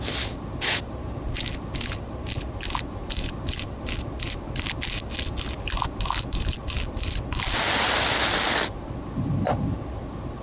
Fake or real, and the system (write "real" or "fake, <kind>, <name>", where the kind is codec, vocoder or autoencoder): real